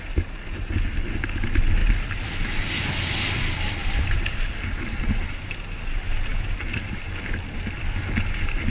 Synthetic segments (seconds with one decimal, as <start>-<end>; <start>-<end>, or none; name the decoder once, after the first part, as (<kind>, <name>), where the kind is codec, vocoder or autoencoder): 3.8-5.0 (vocoder, BigVGAN v2)